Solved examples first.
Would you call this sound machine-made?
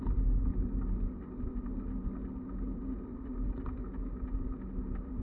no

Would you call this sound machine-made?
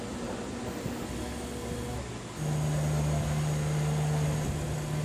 no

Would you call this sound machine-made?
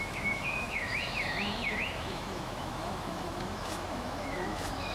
yes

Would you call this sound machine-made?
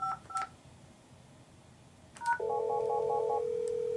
no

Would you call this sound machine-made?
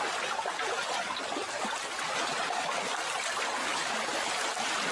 no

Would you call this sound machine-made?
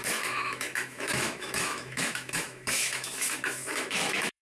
yes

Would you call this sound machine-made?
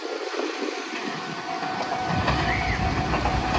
no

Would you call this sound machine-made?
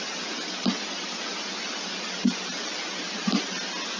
no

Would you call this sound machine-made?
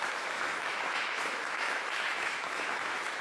yes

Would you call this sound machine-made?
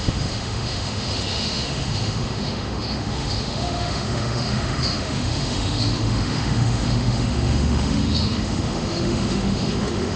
yes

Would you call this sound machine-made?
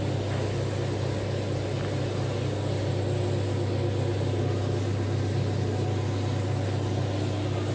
no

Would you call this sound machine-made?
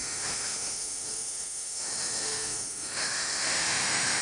yes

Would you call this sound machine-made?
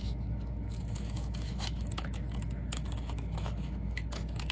yes